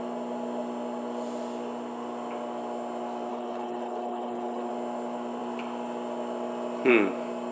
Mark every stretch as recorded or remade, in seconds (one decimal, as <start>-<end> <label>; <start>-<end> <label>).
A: 0.0-3.3 recorded; 3.3-4.7 remade; 4.7-7.5 recorded